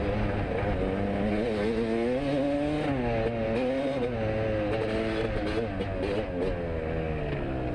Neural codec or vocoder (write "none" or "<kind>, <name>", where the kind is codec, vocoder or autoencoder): none